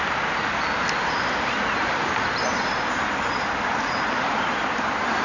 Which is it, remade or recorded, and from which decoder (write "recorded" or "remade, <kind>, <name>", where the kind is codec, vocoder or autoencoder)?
remade, vocoder, BigVGAN v2